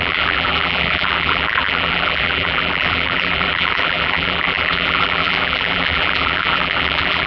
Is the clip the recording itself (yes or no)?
no